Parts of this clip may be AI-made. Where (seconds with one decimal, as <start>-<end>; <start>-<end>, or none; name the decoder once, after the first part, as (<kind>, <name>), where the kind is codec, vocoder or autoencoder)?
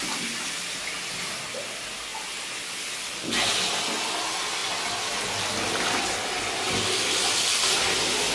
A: none